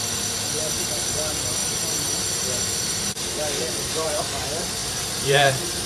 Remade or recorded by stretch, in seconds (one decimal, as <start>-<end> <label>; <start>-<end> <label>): 0.0-1.6 recorded; 1.6-4.2 remade; 4.2-4.8 recorded; 4.8-5.9 remade